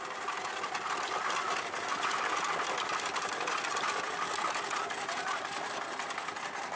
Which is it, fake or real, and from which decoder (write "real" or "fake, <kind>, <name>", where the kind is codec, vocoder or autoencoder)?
real